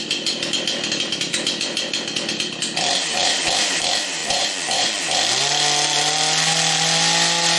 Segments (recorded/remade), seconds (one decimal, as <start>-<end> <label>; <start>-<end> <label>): 0.0-4.2 recorded; 4.2-5.0 remade; 5.0-7.6 recorded